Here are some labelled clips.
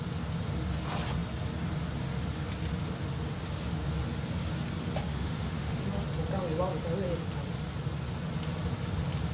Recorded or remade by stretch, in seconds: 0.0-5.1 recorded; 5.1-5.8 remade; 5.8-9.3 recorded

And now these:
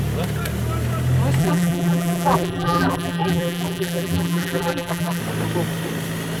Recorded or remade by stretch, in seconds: 0.0-1.4 recorded; 1.4-5.2 remade; 5.2-6.4 recorded

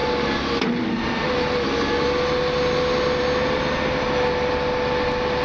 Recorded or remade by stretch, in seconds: 0.0-5.4 recorded

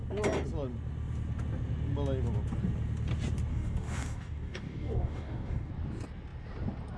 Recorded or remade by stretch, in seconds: 0.0-3.5 recorded; 3.5-5.7 remade; 5.7-7.0 recorded

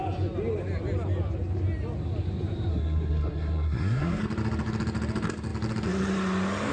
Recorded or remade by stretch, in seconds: 0.0-2.7 recorded; 2.7-4.2 remade; 4.2-6.7 recorded

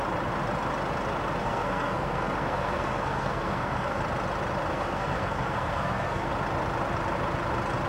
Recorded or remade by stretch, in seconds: 0.0-1.4 recorded; 1.4-4.0 remade; 4.0-4.7 recorded; 4.7-6.3 remade; 6.3-7.9 recorded